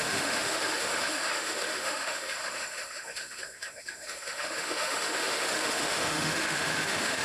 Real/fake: fake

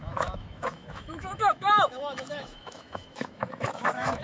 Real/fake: fake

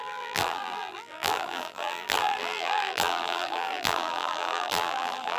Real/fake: fake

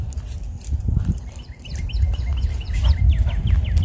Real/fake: real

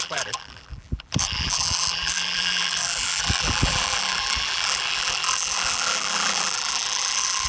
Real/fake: fake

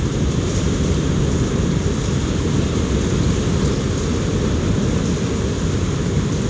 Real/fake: real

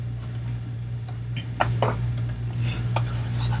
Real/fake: real